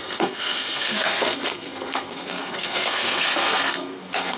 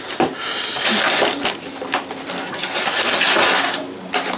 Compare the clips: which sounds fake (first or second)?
first